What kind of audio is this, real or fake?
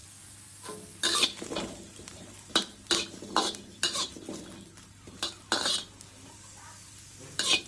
real